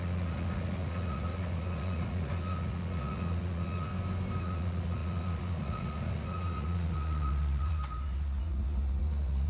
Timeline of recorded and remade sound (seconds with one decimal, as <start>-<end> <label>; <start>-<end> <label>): 0.0-3.9 remade; 3.9-4.4 recorded; 4.4-9.5 remade